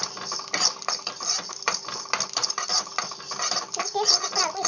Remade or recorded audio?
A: recorded